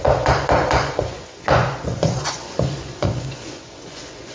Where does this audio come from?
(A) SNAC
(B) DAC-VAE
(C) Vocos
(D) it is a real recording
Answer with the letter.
C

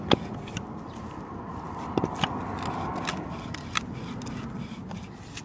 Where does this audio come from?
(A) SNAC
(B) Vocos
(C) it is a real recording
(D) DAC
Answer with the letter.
C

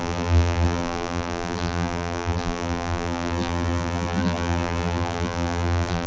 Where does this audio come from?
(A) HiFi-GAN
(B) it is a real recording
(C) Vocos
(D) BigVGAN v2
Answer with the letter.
D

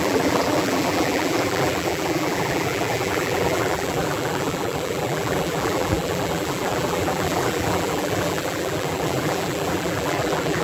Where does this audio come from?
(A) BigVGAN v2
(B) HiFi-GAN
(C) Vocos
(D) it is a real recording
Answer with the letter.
A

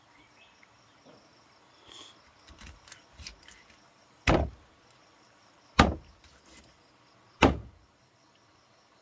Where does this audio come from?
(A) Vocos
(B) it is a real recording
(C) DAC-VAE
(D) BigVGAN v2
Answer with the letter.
B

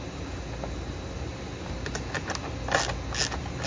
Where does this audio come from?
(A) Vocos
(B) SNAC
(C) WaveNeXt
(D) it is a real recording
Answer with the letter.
D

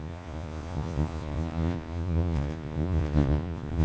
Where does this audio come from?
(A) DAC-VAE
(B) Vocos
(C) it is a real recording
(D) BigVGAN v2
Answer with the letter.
B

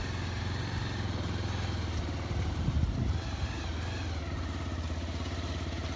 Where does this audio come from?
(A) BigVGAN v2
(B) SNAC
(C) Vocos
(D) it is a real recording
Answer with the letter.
D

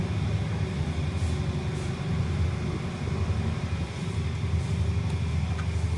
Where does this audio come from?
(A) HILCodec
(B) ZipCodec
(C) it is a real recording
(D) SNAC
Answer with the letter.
C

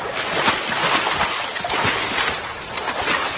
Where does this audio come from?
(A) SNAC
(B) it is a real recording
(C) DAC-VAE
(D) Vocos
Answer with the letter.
B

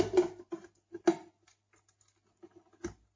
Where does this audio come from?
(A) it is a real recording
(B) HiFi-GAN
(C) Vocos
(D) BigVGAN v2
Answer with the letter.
A